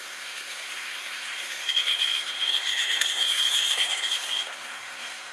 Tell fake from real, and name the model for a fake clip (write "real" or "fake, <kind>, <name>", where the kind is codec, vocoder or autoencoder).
fake, codec, SNAC